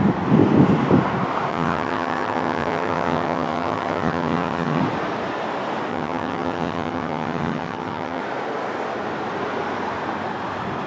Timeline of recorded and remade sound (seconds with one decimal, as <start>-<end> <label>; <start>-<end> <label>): 0.0-1.5 recorded; 1.5-4.8 remade; 4.8-5.9 recorded; 5.9-8.2 remade; 8.2-10.9 recorded